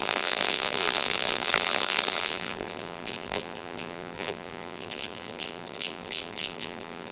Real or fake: fake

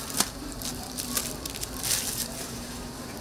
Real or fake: fake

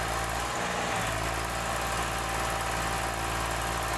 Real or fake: real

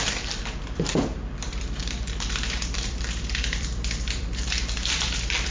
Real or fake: fake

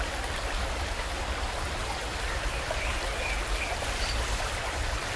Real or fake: fake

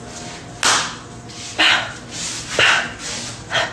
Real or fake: real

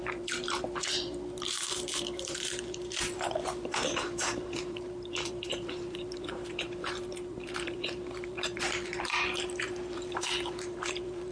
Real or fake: fake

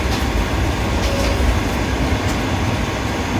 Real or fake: real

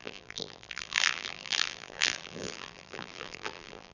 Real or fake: fake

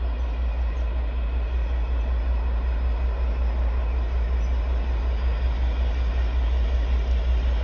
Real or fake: real